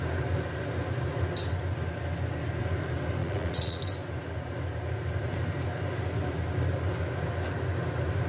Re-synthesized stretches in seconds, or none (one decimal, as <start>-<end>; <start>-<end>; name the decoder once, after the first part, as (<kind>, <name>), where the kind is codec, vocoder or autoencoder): 3.2-3.8 (vocoder, Vocos)